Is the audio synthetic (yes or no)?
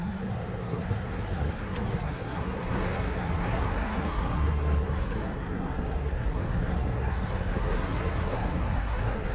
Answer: yes